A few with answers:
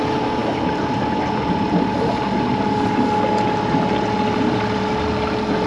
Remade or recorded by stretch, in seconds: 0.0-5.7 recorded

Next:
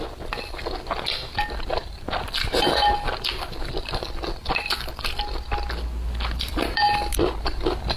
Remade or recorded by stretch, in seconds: 0.0-8.0 recorded

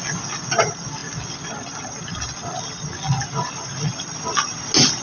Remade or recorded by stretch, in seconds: 0.0-5.0 recorded

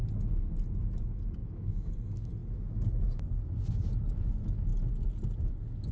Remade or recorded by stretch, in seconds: 0.0-1.4 recorded; 1.4-1.9 remade; 1.9-5.9 recorded

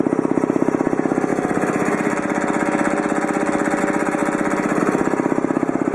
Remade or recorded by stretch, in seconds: 0.0-1.3 remade; 1.3-3.8 recorded; 3.8-4.2 remade; 4.2-4.8 recorded; 4.8-5.9 remade

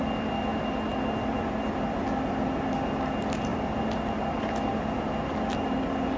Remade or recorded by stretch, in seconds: 0.0-0.9 recorded; 0.9-1.6 remade; 1.6-3.5 recorded; 3.5-4.2 remade; 4.2-4.7 recorded; 4.7-5.3 remade; 5.3-6.2 recorded

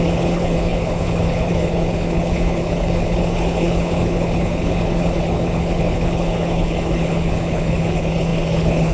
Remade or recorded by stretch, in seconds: 0.0-8.9 remade